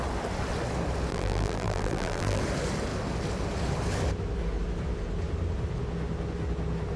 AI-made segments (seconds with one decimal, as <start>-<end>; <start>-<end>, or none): 1.1-2.4